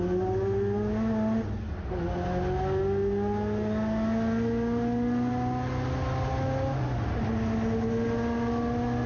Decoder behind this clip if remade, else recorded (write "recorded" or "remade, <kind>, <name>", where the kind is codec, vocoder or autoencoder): recorded